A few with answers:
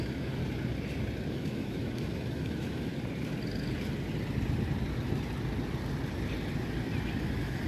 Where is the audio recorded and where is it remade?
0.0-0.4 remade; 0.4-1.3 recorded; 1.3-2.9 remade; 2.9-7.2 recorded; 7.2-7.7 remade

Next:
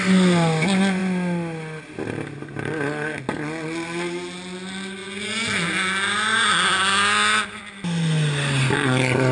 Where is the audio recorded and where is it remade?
0.0-9.3 recorded

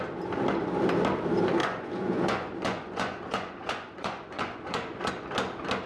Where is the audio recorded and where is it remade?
0.0-1.6 recorded; 1.6-5.1 remade; 5.1-5.9 recorded

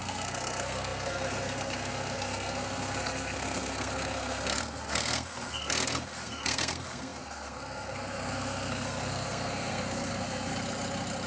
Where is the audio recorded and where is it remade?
0.0-10.5 remade; 10.5-11.3 recorded

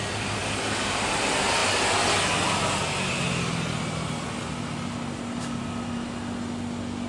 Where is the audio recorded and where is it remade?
0.0-0.4 recorded; 0.4-1.1 remade; 1.1-7.1 recorded

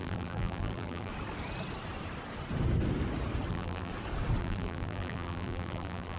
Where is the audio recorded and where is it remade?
0.0-1.1 remade; 1.1-3.5 recorded; 3.5-3.9 remade; 3.9-4.4 recorded; 4.4-6.2 remade

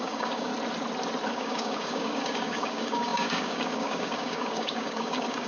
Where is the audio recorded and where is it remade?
0.0-0.5 remade; 0.5-1.3 recorded; 1.3-5.5 remade

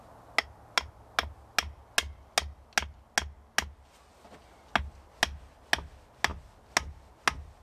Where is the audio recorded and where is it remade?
0.0-7.6 recorded